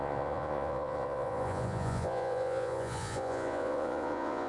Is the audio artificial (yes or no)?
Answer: yes